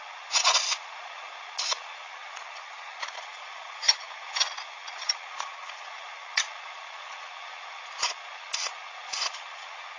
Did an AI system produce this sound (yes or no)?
yes